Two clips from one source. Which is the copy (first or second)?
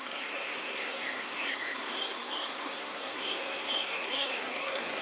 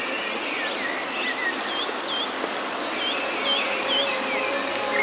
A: first